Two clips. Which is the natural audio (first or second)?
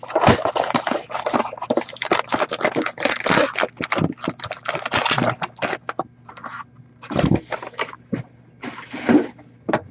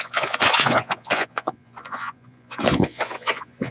first